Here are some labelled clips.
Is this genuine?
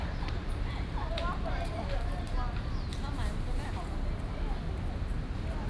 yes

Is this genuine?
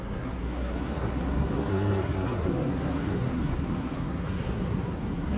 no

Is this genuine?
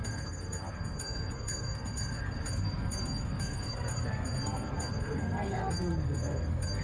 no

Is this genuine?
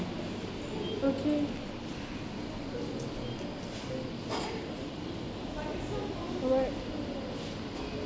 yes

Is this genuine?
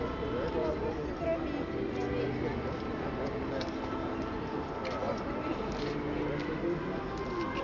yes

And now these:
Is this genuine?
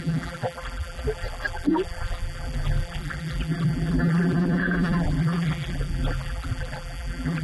no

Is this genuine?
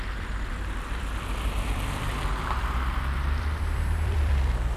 no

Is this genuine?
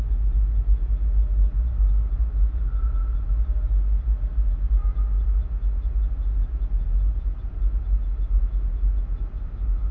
yes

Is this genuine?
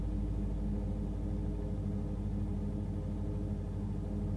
yes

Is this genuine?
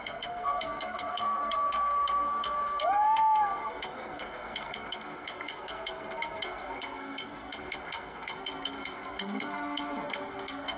no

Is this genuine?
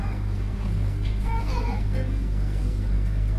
no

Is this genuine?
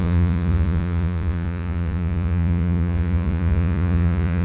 no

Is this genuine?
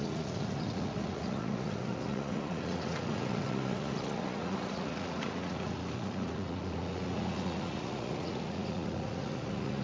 no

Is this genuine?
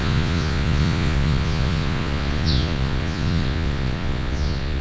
no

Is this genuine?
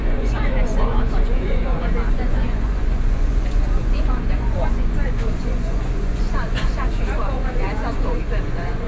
no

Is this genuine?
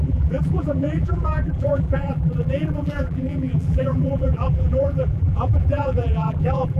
no